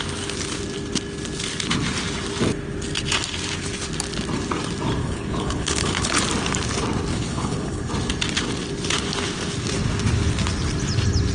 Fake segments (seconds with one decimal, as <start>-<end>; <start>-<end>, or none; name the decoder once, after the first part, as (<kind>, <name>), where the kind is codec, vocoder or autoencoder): 5.0-6.2 (codec, HILCodec); 7.1-7.9